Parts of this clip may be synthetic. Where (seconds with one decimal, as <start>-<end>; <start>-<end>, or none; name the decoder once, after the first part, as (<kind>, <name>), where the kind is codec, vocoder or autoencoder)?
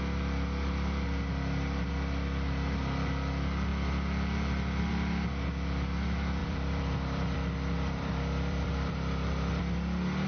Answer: 6.4-9.6 (vocoder, BigVGAN v2)